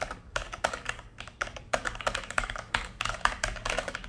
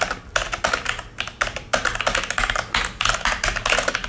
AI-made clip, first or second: first